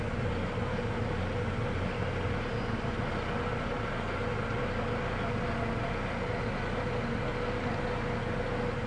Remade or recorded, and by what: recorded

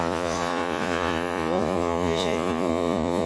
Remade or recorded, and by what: remade, vocoder, Vocos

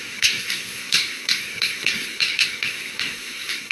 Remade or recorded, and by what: remade, codec, SNAC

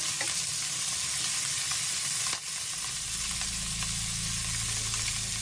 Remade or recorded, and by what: recorded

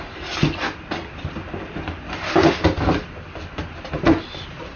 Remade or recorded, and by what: recorded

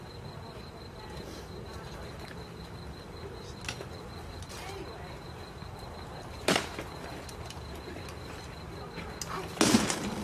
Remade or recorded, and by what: recorded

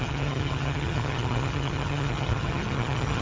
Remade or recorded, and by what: remade, vocoder, HiFi-GAN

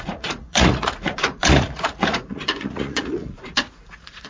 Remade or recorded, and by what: remade, vocoder, Vocos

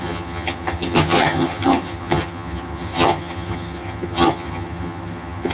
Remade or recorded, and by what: remade, vocoder, HiFi-GAN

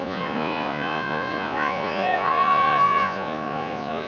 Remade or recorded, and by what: remade, vocoder, Vocos